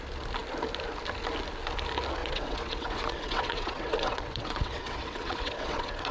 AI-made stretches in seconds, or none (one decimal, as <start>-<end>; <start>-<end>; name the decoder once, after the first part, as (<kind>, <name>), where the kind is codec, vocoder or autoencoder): 2.2-6.1 (vocoder, WaveNeXt)